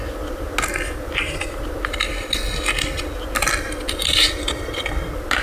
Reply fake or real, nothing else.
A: real